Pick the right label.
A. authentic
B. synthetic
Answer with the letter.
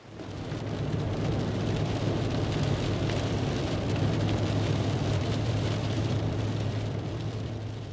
B